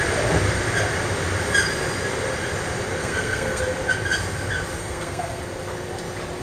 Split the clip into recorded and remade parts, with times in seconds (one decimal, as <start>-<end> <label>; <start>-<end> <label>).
0.0-3.0 recorded; 3.0-3.6 remade; 3.6-4.8 recorded; 4.8-5.4 remade; 5.4-6.4 recorded